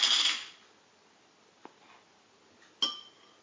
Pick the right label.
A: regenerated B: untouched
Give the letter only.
B